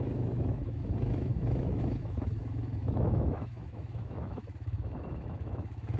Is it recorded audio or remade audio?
remade